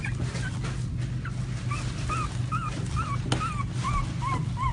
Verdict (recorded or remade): recorded